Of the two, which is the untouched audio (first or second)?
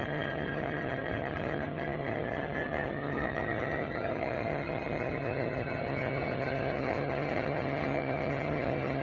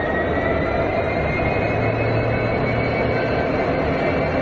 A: second